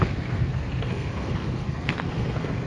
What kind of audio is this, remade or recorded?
remade